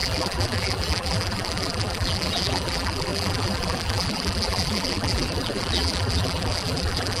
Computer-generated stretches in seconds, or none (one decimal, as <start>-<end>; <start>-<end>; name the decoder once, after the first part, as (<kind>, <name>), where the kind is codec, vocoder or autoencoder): 0.0-7.2 (vocoder, BigVGAN v2)